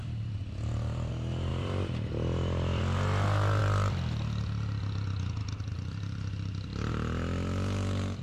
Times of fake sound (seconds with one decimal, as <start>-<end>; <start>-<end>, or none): 0.0-1.1; 1.5-2.8; 5.7-6.9